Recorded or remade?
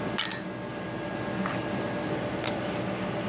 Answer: recorded